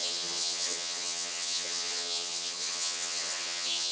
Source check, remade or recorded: remade